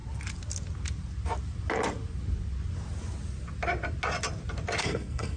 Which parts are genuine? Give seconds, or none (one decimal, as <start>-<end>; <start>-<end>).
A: 0.0-4.8